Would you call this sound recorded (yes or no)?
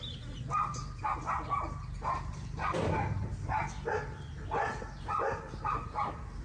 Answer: yes